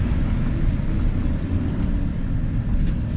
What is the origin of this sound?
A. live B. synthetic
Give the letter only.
A